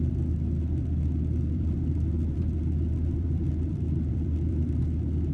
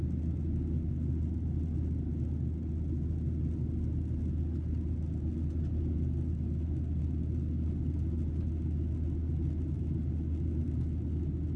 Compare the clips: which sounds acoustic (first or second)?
second